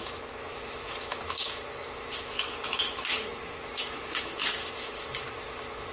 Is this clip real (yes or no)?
no